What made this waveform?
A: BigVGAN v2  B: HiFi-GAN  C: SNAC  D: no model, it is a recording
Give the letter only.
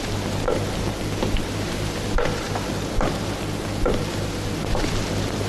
D